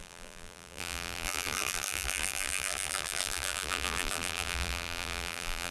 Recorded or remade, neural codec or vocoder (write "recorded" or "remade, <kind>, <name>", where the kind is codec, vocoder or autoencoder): remade, vocoder, BigVGAN v2